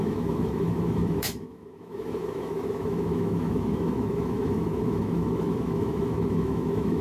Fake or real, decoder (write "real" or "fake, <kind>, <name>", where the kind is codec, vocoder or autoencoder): fake, autoencoder, DAC-VAE